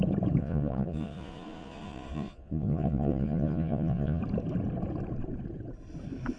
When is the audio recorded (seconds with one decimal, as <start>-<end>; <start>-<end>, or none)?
0.0-0.4; 4.2-6.4